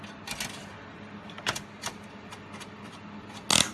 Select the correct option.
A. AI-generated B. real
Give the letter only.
B